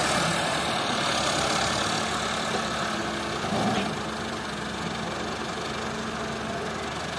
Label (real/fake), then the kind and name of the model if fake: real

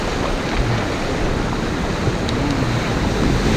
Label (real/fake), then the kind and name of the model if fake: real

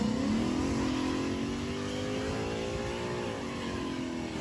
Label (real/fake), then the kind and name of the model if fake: real